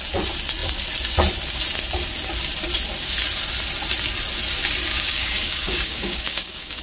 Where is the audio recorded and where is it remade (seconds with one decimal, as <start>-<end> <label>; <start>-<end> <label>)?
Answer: 0.0-4.9 recorded; 4.9-6.8 remade